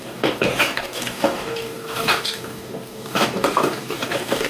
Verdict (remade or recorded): remade